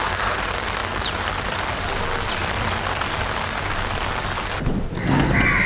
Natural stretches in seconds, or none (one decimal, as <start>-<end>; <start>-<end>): 0.0-5.7

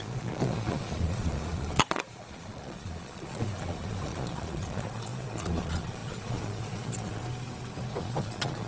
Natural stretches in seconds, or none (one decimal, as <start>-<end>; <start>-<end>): 7.2-8.0

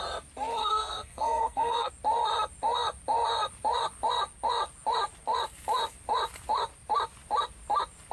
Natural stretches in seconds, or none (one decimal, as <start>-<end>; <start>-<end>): 0.0-0.6; 1.9-8.1

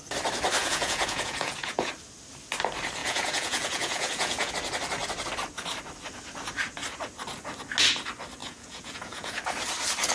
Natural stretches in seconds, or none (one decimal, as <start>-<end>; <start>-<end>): 0.0-0.6; 1.9-3.0; 4.5-8.4; 9.4-10.1

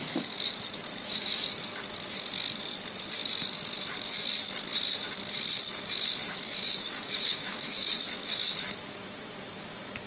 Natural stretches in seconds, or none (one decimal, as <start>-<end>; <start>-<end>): 0.0-6.2; 8.0-10.1